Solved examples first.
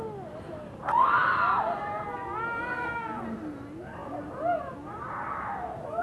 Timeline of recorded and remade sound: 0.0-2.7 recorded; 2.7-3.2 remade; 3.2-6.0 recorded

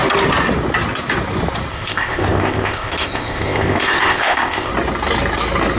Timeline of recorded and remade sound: 0.0-1.7 recorded; 1.7-4.7 remade; 4.7-5.8 recorded

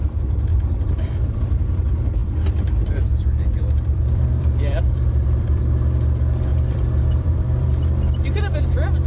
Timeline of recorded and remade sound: 0.0-0.5 recorded; 0.5-1.4 remade; 1.4-2.2 recorded; 2.2-5.6 remade; 5.6-6.5 recorded; 6.5-7.7 remade; 7.7-9.1 recorded

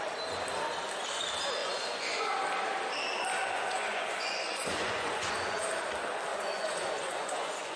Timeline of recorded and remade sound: 0.0-1.6 recorded; 1.6-2.3 remade; 2.3-3.4 recorded; 3.4-5.6 remade; 5.6-6.3 recorded; 6.3-7.8 remade

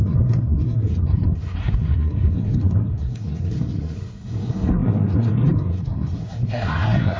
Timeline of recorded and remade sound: 0.0-7.2 remade

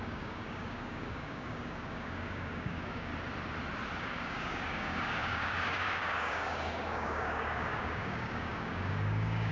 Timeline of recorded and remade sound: 0.0-3.1 remade; 3.1-4.0 recorded; 4.0-9.5 remade

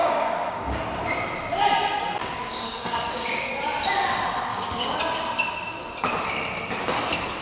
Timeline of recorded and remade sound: 0.0-0.8 remade; 0.8-2.2 recorded; 2.2-3.5 remade; 3.5-4.5 recorded; 4.5-5.0 remade; 5.0-7.4 recorded